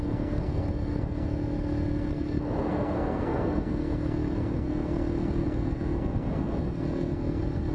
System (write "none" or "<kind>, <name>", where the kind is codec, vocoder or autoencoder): codec, SNAC